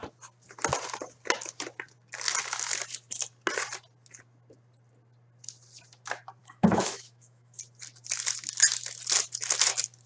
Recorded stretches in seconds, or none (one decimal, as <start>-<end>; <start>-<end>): 0.0-6.4; 7.6-10.1